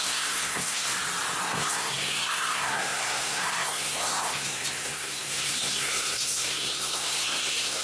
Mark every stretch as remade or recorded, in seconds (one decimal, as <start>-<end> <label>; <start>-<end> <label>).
0.0-0.9 remade; 0.9-1.4 recorded; 1.4-7.8 remade